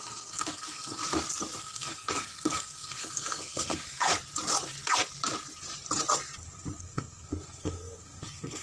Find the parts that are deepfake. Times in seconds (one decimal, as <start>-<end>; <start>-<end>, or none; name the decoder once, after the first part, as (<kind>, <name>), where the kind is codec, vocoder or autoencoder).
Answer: 0.0-1.0 (codec, SNAC); 1.6-4.1; 6.8-8.6